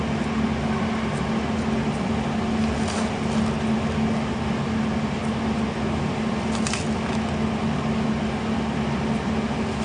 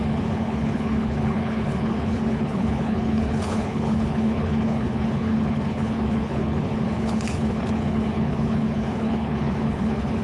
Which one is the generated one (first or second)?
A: second